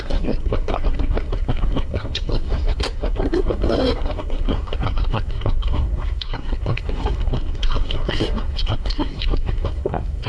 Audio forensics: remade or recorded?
remade